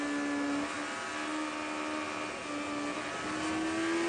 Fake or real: real